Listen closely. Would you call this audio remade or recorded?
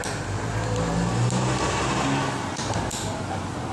recorded